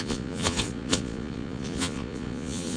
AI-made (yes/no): yes